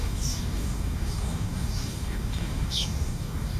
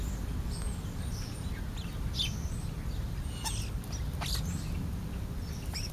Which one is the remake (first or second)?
first